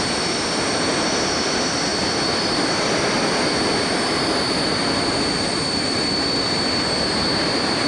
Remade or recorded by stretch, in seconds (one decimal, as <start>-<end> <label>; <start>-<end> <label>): 0.0-7.9 recorded